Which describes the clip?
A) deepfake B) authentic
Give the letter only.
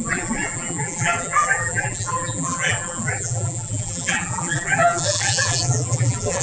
A